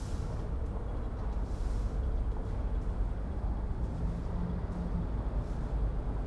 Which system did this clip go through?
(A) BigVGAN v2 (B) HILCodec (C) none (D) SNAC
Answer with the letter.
C